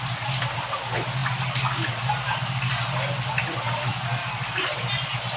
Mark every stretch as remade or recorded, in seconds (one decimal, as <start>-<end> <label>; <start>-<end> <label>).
0.0-5.4 recorded